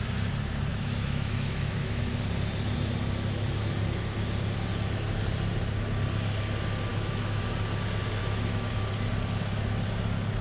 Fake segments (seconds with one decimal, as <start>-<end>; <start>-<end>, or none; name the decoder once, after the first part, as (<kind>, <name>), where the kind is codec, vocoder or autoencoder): 0.7-2.0 (autoencoder, DAC-VAE); 6.9-7.5; 8.2-8.7